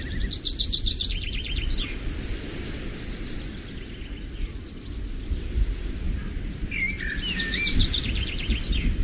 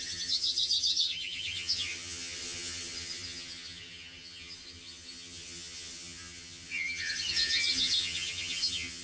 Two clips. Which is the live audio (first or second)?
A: first